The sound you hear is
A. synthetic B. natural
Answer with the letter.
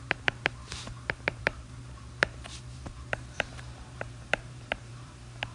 A